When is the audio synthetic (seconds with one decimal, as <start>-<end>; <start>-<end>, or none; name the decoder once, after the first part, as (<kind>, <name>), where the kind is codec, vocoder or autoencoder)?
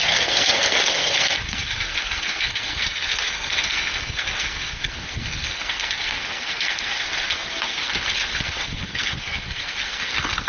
0.0-10.5 (codec, SNAC)